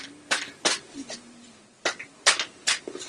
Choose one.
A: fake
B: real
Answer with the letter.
B